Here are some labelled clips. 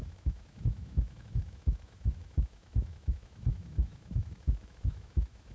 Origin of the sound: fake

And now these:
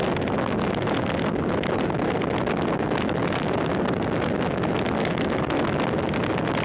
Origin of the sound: real